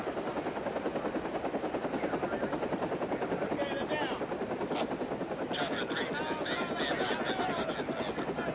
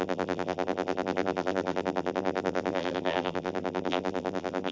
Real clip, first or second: first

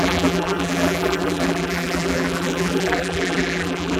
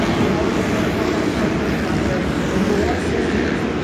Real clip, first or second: second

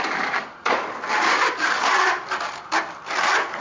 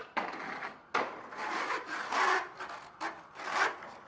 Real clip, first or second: second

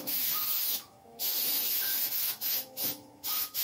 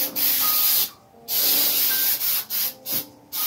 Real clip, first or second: second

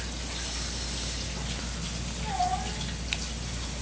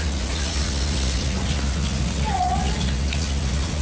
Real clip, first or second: first